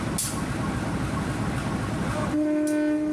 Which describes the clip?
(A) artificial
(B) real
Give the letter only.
B